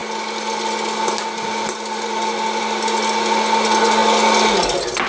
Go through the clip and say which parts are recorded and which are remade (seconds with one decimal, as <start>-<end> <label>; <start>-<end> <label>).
0.0-5.1 recorded

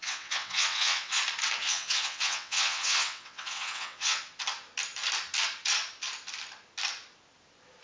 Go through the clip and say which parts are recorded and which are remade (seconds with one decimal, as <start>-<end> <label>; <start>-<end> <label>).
0.0-1.2 remade; 1.2-1.6 recorded; 1.6-4.2 remade; 4.2-7.8 recorded

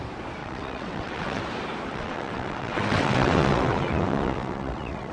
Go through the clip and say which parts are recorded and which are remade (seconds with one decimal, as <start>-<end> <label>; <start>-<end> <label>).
0.0-0.4 recorded; 0.4-1.4 remade; 1.4-1.9 recorded; 1.9-5.1 remade

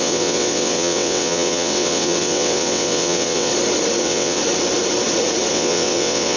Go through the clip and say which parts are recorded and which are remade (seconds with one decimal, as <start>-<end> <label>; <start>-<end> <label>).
0.0-3.5 remade; 3.5-4.0 recorded; 4.0-4.4 remade; 4.4-5.5 recorded; 5.5-6.4 remade